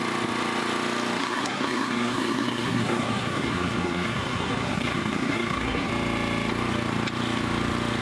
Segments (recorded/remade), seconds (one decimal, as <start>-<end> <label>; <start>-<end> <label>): 0.0-1.2 recorded; 1.2-5.9 remade; 5.9-8.0 recorded